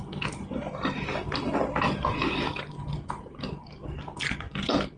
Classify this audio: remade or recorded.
recorded